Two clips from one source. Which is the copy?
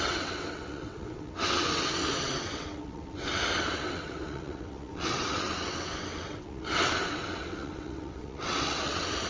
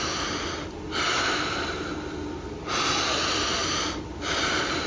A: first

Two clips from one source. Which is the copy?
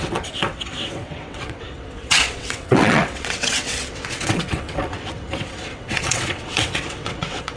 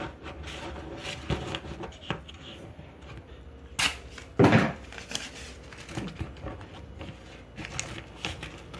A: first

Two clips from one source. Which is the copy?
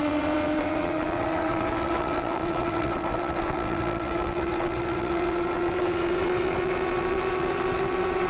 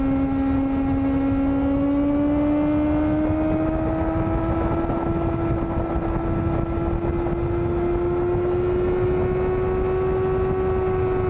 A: first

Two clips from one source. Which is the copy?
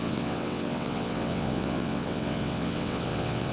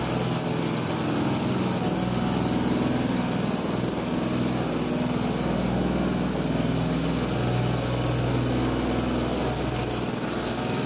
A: first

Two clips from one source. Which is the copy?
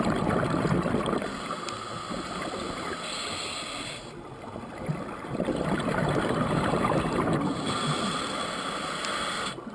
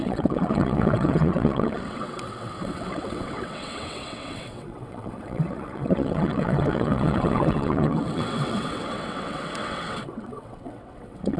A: second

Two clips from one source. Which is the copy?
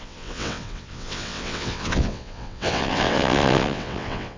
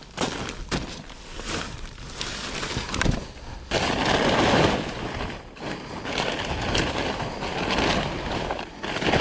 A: first